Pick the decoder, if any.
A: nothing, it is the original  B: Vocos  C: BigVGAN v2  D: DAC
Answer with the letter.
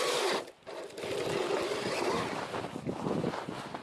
A